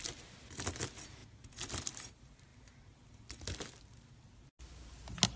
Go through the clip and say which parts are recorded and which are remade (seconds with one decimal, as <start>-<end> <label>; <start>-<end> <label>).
0.0-5.4 recorded